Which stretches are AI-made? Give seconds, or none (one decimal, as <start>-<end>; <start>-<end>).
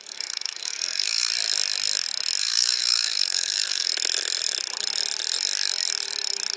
0.0-1.3; 2.4-3.9